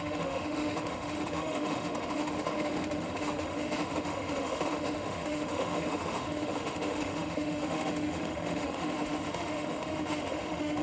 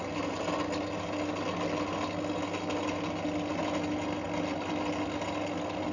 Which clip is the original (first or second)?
second